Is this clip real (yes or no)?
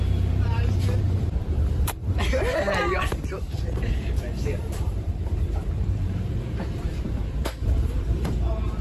no